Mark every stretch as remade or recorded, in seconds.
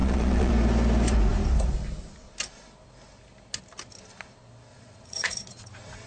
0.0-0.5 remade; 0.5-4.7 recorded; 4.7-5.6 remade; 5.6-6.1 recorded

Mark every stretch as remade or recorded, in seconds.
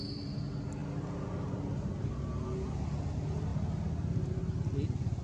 0.0-3.5 recorded; 3.5-4.3 remade; 4.3-5.2 recorded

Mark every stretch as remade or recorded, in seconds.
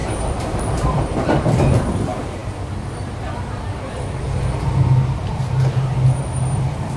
0.0-2.4 remade; 2.4-6.6 recorded; 6.6-7.0 remade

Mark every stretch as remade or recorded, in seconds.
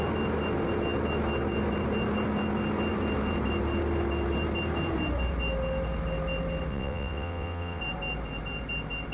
0.0-6.7 recorded; 6.7-7.8 remade; 7.8-9.1 recorded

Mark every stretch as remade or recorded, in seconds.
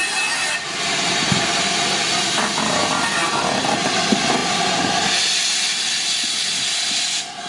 0.0-7.5 recorded